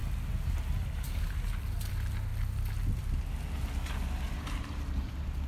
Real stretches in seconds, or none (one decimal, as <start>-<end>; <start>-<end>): 0.0-5.5